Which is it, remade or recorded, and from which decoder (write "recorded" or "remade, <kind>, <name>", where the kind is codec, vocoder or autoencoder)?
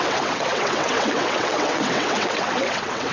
remade, vocoder, WaveNeXt